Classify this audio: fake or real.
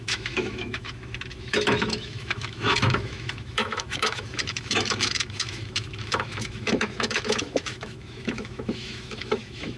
fake